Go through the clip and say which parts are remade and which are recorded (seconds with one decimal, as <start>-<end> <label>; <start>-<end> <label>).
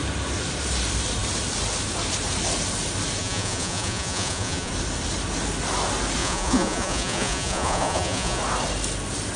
0.0-3.2 recorded; 3.2-4.7 remade; 4.7-6.2 recorded; 6.2-8.4 remade; 8.4-9.4 recorded